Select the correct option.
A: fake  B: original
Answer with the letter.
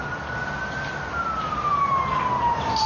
B